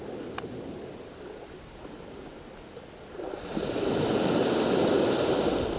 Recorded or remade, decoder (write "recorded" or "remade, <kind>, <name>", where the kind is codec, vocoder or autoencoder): recorded